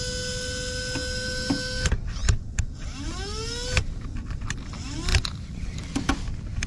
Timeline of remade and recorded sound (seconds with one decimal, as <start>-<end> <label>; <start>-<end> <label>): 0.0-6.7 recorded